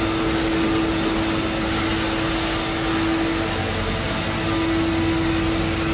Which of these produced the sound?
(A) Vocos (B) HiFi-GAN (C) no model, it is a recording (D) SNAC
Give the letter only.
C